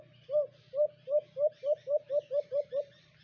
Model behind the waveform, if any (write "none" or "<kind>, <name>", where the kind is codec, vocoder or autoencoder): none